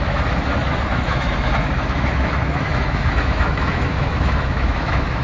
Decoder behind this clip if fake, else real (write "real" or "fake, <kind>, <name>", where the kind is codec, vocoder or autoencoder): fake, autoencoder, DAC-VAE